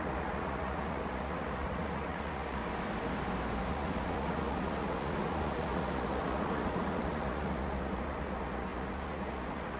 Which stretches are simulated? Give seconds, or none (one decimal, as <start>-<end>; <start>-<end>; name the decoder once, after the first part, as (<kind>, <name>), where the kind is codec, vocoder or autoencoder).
0.0-2.6 (vocoder, Vocos); 3.7-9.8